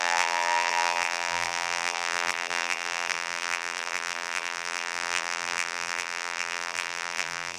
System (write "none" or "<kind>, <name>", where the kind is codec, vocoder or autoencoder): vocoder, BigVGAN v2